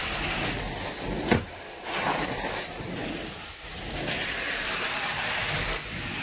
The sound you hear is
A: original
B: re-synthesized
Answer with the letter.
A